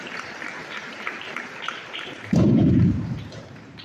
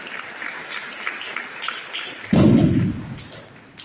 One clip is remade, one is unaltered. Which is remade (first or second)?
first